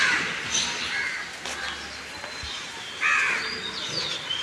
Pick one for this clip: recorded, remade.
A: recorded